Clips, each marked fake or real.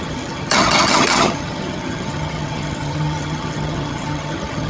fake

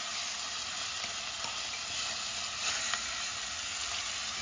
real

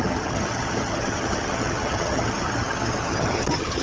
fake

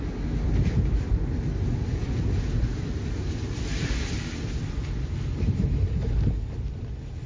real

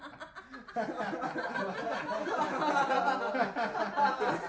real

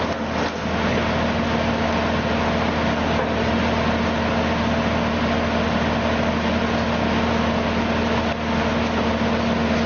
real